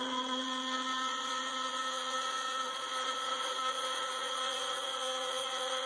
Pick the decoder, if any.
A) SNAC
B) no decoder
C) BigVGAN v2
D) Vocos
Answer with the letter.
D